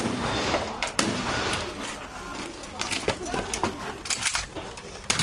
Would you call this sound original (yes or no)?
yes